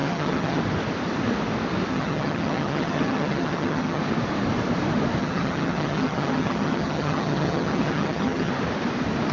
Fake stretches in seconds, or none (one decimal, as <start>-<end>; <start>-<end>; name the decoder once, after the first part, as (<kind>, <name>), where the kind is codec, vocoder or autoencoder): 0.0-0.6 (vocoder, HiFi-GAN); 1.9-4.0; 5.2-8.5